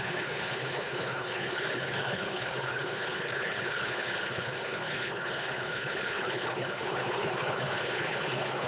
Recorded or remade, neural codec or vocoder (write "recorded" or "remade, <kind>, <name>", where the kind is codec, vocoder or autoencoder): remade, codec, HILCodec